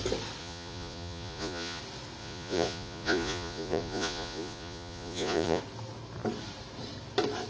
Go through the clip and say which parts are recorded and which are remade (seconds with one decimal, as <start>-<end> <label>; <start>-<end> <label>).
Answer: 0.0-0.4 recorded; 0.4-1.8 remade; 1.8-2.2 recorded; 2.2-5.6 remade; 5.6-7.5 recorded